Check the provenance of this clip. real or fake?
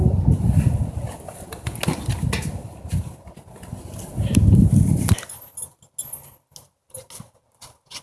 real